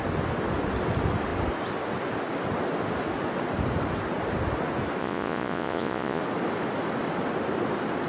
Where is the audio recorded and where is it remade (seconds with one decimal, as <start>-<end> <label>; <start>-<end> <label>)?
0.0-5.0 recorded; 5.0-6.2 remade; 6.2-8.1 recorded